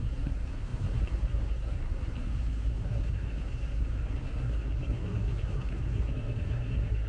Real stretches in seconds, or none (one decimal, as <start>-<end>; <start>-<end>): none